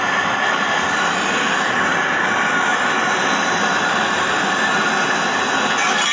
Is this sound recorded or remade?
remade